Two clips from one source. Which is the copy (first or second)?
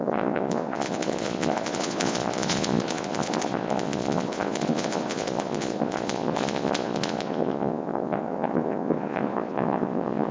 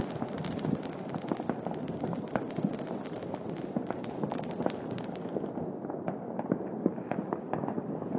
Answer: first